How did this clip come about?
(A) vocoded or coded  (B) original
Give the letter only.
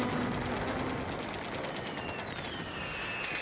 B